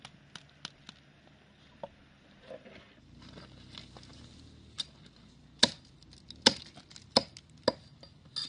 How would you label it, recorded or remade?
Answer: recorded